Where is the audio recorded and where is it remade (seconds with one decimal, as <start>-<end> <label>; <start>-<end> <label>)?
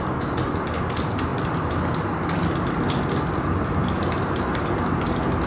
0.0-3.8 recorded; 3.8-5.5 remade